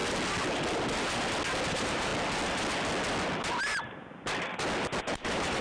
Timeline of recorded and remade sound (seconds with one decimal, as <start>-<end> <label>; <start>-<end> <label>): 0.0-1.7 recorded; 1.7-2.1 remade; 2.1-5.0 recorded; 5.0-5.6 remade